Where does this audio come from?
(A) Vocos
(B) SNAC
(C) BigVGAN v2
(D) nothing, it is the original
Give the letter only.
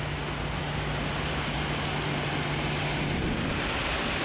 D